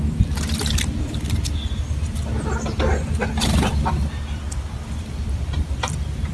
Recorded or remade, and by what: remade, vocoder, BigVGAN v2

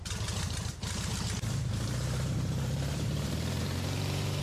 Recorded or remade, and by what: remade, vocoder, BigVGAN v2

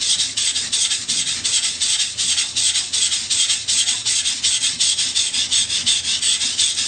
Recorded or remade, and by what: recorded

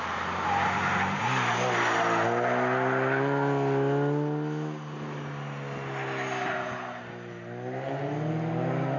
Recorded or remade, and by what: recorded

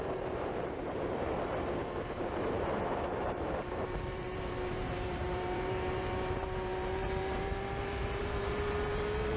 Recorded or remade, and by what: remade, vocoder, BigVGAN v2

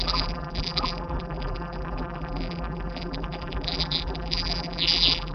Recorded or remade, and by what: remade, vocoder, BigVGAN v2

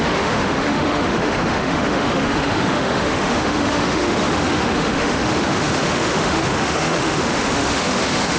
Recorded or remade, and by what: remade, autoencoder, DAC-VAE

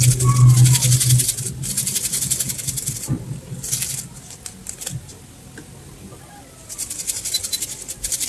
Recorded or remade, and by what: recorded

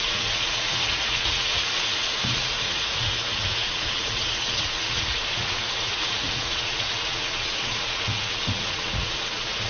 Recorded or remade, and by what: remade, vocoder, Vocos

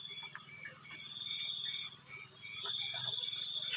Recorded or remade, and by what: recorded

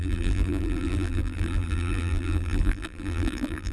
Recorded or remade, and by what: remade, vocoder, BigVGAN v2